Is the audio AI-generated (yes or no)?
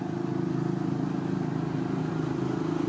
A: no